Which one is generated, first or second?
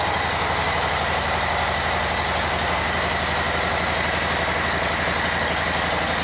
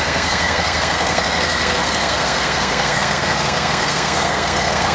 second